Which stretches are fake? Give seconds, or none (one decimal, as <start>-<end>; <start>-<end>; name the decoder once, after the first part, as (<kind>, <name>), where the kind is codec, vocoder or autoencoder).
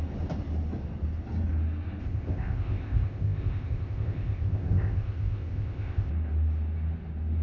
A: 2.0-6.1 (codec, ZipCodec)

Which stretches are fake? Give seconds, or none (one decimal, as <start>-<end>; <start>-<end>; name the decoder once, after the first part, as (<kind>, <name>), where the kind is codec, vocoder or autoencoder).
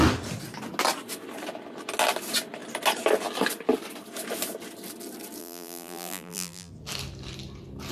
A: 5.4-6.7 (vocoder, BigVGAN v2)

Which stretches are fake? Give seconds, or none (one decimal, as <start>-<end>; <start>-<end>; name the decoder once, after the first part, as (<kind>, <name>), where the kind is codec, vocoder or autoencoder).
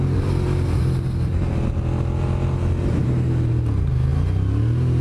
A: none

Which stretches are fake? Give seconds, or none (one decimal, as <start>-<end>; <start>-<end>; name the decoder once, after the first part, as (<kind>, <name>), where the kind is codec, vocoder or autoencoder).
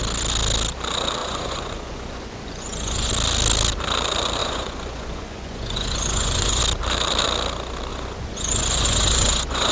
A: 1.2-3.1 (vocoder, Vocos); 4.4-6.6; 7.9-9.7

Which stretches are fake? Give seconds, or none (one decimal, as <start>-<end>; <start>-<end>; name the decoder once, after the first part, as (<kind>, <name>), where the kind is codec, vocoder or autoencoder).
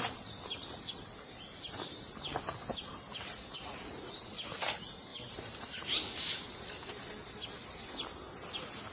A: none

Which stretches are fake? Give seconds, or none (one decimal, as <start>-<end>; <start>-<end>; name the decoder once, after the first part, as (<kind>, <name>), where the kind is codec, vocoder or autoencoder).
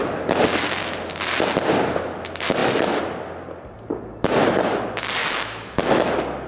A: 5.2-6.1 (autoencoder, DAC-VAE)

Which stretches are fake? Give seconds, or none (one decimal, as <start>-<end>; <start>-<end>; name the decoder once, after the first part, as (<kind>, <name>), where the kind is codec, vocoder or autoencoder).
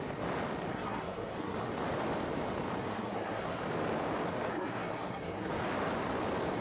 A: 0.7-1.7 (codec, SNAC); 2.8-3.6; 4.5-5.5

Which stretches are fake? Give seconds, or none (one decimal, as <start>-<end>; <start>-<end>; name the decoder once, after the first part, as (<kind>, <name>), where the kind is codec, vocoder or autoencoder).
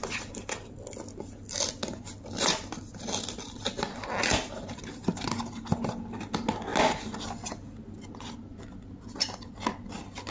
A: none